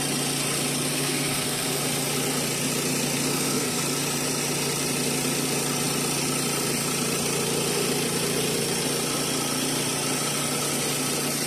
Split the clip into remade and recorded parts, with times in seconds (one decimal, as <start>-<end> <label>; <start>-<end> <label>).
0.0-0.9 recorded; 0.9-1.8 remade; 1.8-3.3 recorded; 3.3-3.8 remade; 3.8-11.5 recorded